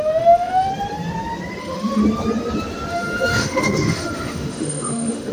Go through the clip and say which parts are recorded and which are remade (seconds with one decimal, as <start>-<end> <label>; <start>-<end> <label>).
0.0-0.7 remade; 0.7-1.6 recorded; 1.6-2.0 remade; 2.0-2.9 recorded; 2.9-5.3 remade